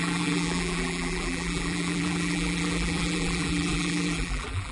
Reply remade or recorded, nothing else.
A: remade